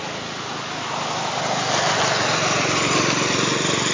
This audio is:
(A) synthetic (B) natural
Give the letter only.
B